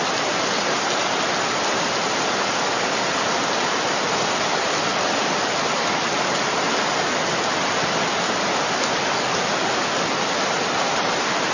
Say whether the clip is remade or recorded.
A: recorded